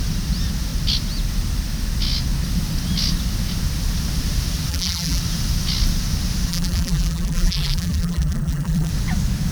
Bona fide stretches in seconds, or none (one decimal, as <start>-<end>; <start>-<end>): 0.0-4.7; 5.2-6.5; 8.9-9.5